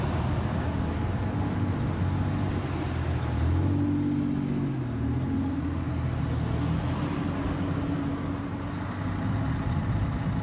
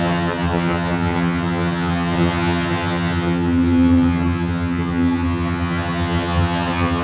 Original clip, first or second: first